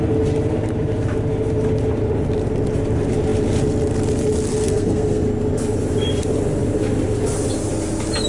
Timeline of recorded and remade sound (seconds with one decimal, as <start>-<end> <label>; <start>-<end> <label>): 0.0-4.5 recorded; 4.5-5.2 remade; 5.2-8.3 recorded